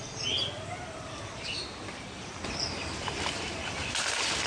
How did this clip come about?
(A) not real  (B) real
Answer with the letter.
A